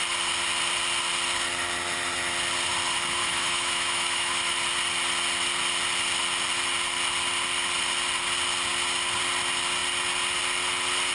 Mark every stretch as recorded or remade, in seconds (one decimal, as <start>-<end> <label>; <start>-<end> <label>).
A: 0.0-3.2 recorded; 3.2-4.5 remade; 4.5-11.1 recorded